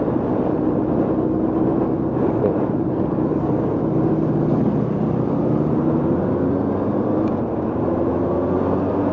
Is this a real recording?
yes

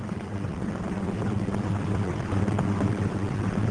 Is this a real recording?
no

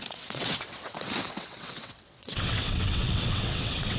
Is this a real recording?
no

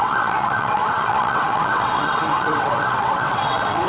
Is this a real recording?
no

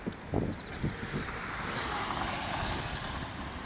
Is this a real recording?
yes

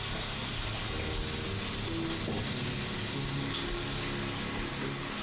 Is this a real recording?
yes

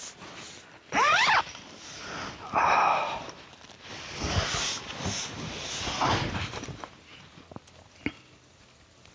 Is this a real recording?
yes